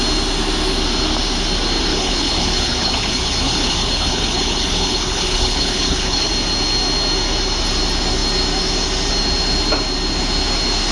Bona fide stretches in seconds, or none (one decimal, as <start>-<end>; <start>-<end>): 0.0-1.9; 6.3-10.9